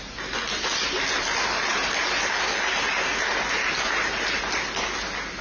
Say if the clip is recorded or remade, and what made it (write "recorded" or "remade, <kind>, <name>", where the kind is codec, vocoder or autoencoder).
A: recorded